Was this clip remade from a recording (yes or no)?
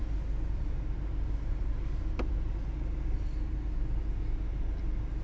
no